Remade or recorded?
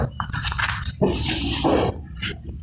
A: recorded